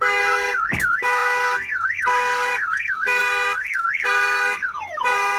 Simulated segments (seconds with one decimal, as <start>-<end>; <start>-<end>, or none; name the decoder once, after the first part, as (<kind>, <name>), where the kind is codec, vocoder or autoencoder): 0.0-5.4 (codec, SNAC)